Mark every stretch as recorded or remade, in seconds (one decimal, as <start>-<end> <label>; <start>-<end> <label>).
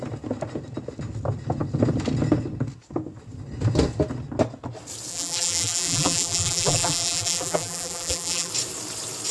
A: 0.0-5.1 recorded; 5.1-8.5 remade; 8.5-9.3 recorded